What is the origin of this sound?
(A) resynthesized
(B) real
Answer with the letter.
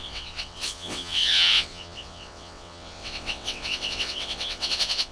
A